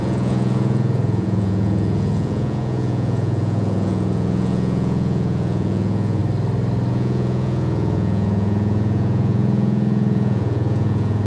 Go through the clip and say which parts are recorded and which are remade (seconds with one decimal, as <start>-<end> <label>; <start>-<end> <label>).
0.0-6.2 remade; 6.2-6.9 recorded; 6.9-11.3 remade